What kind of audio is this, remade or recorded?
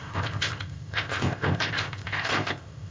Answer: remade